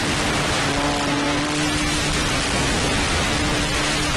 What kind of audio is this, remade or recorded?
recorded